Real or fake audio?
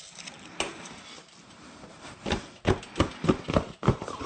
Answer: real